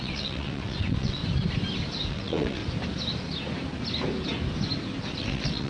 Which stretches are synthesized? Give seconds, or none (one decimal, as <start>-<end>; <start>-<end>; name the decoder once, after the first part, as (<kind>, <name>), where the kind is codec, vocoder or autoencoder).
0.0-1.2 (vocoder, WaveNeXt); 2.1-2.6; 5.2-5.7